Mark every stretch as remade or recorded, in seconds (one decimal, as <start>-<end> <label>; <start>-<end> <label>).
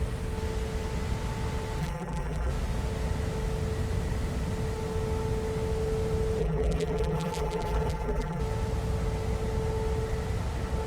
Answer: 0.0-1.8 recorded; 1.8-2.5 remade; 2.5-6.4 recorded; 6.4-8.4 remade; 8.4-10.9 recorded